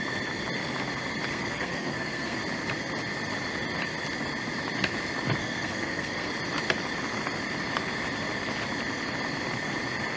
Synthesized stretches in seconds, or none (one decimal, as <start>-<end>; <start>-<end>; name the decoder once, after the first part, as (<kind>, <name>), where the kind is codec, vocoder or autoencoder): 1.3-2.4 (codec, SNAC); 5.4-6.3